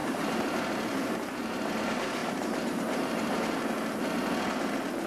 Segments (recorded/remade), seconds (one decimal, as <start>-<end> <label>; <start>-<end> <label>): 0.0-1.8 remade; 1.8-2.2 recorded; 2.2-4.1 remade; 4.1-5.1 recorded